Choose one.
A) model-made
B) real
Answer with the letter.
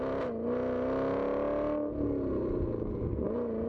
B